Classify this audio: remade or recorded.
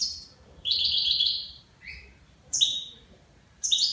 remade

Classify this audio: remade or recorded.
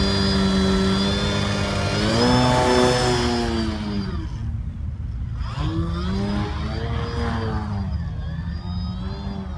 recorded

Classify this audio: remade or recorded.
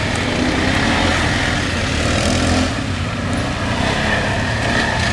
recorded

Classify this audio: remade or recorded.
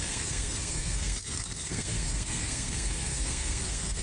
remade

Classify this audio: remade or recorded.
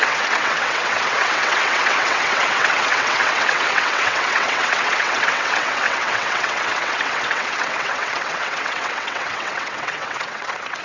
remade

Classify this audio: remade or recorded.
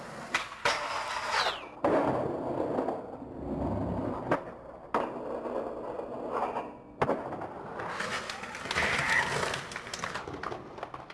recorded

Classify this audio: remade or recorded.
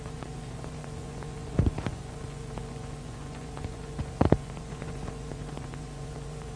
remade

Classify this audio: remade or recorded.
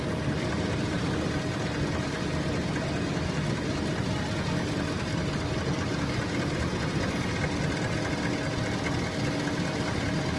recorded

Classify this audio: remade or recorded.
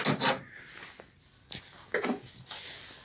recorded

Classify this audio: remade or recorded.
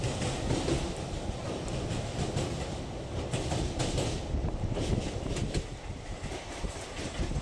recorded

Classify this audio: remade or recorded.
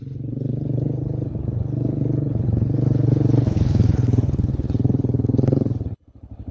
remade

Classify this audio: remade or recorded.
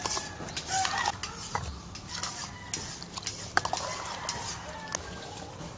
recorded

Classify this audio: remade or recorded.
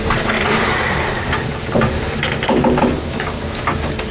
remade